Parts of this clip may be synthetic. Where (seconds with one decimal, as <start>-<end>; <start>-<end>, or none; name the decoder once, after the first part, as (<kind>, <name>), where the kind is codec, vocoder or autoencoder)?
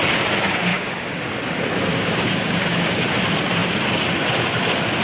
0.7-1.4 (codec, DAC); 1.9-3.0